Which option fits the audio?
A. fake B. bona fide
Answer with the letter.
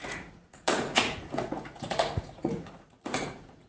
A